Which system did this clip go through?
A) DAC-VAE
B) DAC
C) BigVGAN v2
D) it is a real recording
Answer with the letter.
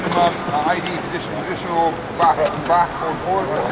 D